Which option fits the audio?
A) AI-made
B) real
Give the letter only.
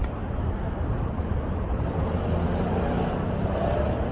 B